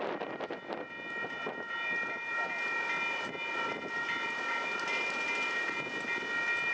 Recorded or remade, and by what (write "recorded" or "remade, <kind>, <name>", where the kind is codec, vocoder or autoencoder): recorded